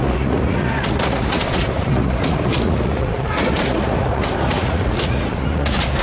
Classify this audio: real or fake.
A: fake